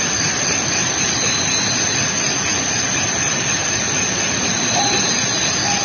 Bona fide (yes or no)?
yes